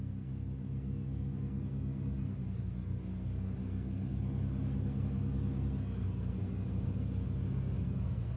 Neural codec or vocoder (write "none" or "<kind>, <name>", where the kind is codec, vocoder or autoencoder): codec, SNAC